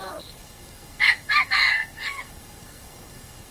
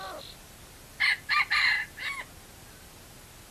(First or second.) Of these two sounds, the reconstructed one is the first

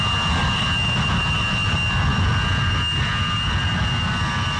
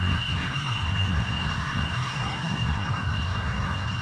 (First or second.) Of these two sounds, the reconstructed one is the second